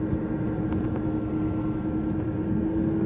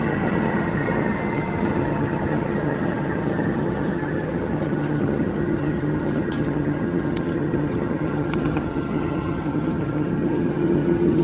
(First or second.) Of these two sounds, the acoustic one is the first